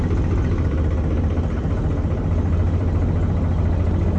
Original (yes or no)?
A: no